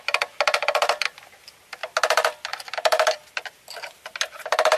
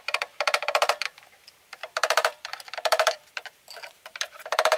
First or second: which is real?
first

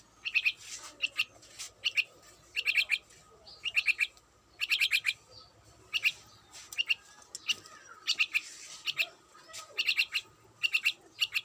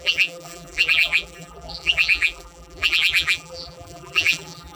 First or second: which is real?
first